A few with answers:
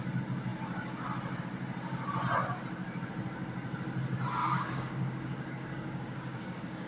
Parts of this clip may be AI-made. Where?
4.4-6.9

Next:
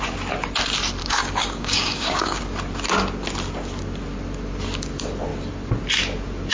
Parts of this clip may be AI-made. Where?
1.0-2.4

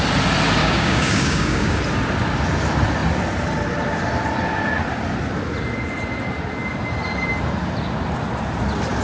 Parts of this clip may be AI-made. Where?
0.6-1.8

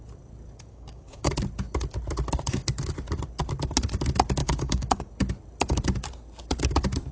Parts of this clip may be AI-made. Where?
0.7-1.3; 4.4-5.1

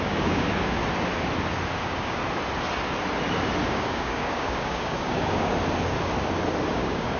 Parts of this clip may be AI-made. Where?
0.0-0.8; 1.8-2.2; 3.7-5.5; 6.7-7.2

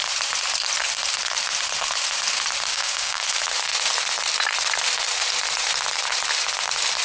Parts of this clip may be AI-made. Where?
2.7-3.2